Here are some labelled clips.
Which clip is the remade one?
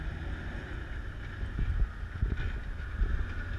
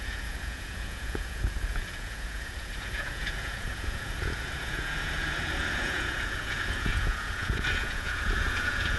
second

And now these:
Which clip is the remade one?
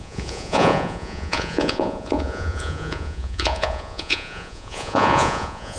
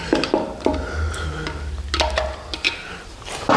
first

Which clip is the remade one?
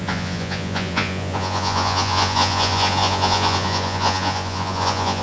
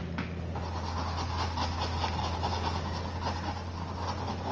first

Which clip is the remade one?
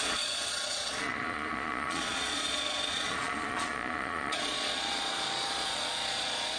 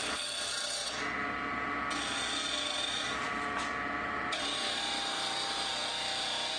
first